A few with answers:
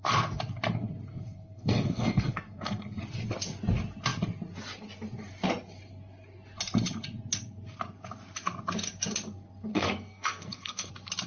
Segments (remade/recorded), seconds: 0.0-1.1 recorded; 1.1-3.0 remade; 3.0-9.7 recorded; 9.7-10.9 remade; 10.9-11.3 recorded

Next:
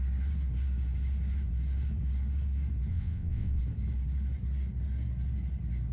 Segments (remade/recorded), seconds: 0.0-2.9 recorded; 2.9-3.6 remade; 3.6-5.9 recorded